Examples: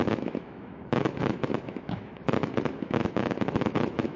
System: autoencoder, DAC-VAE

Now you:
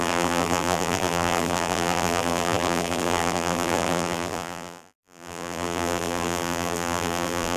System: vocoder, BigVGAN v2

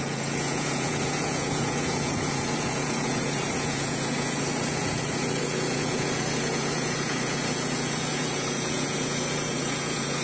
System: vocoder, Vocos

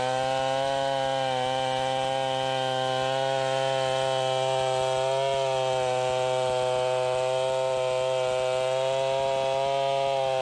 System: none